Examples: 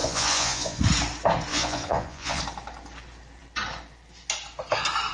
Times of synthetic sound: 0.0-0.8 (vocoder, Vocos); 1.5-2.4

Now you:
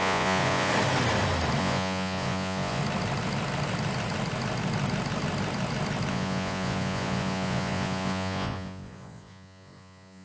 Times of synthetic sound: 0.0-0.7 (vocoder, Vocos); 1.6-2.8; 6.1-10.2

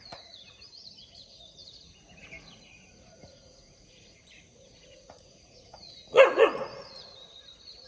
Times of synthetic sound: 0.0-7.9 (vocoder, Vocos)

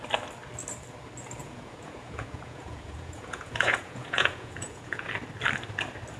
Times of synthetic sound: 1.4-5.1 (vocoder, Vocos)

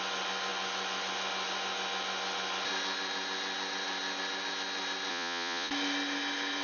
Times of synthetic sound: 5.1-5.7 (vocoder, Vocos)

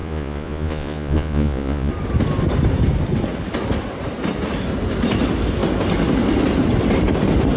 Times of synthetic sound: 0.0-1.9 (vocoder, Vocos)

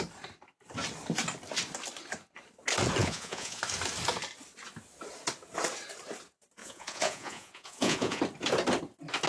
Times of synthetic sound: 3.0-3.6 (vocoder, Vocos); 6.6-8.2

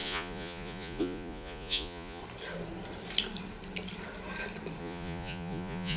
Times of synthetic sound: 0.0-2.2 (vocoder, Vocos); 4.8-6.0